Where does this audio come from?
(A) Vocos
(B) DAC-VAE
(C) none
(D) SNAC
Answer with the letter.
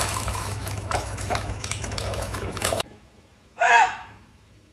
B